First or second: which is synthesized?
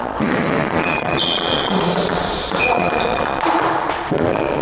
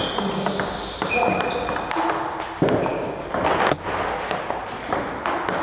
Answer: first